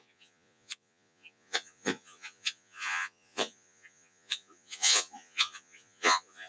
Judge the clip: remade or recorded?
remade